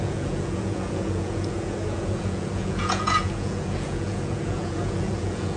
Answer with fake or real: fake